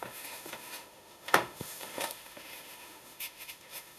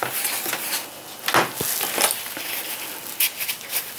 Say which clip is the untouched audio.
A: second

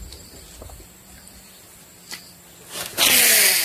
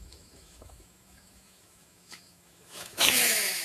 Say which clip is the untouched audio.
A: first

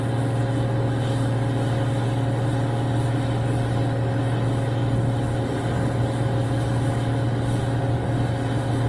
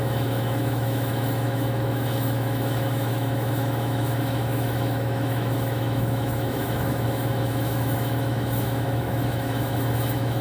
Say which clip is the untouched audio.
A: first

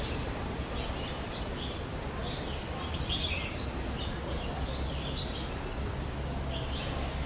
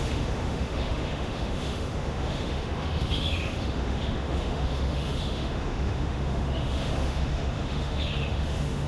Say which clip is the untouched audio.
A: first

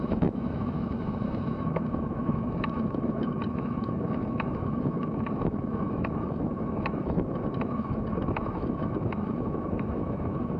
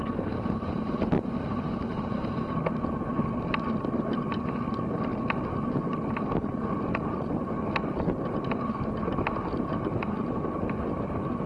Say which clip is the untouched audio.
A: second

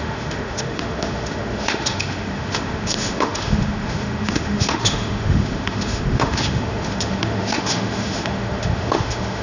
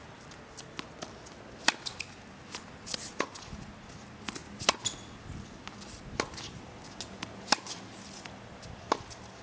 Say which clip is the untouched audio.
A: second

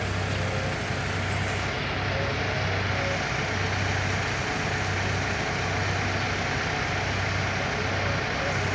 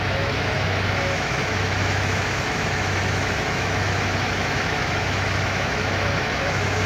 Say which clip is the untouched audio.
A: first